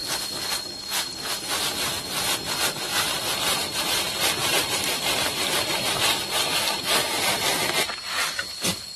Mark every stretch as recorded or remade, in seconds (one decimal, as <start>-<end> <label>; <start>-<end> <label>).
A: 0.0-2.9 recorded; 2.9-3.8 remade; 3.8-4.4 recorded; 4.4-7.4 remade; 7.4-9.0 recorded